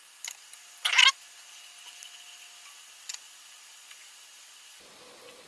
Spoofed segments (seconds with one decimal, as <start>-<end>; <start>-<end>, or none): none